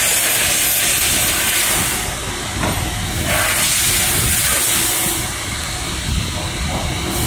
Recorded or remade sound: recorded